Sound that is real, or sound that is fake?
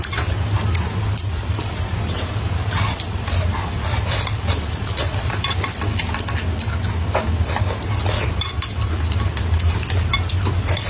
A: real